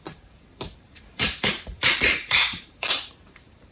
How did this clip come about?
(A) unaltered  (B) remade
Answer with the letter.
B